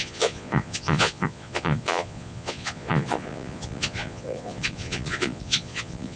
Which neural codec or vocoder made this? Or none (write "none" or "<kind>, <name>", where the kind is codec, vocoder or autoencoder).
vocoder, Vocos